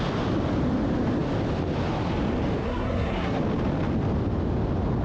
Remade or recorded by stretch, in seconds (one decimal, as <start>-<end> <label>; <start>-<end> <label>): 0.0-2.6 recorded; 2.6-3.4 remade; 3.4-5.0 recorded